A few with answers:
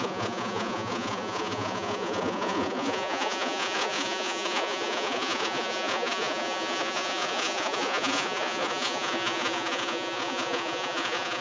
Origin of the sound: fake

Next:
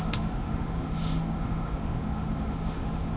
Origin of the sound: fake